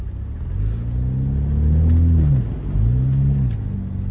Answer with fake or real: real